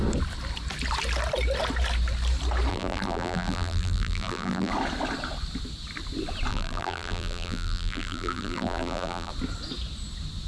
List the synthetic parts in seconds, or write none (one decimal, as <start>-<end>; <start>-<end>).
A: 2.7-4.7; 6.5-9.3